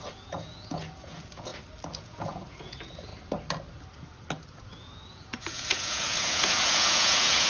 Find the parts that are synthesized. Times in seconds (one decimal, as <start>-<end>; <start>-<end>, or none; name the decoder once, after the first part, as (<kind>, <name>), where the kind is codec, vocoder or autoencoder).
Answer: 0.0-1.5 (vocoder, Vocos); 2.0-3.1; 4.7-7.5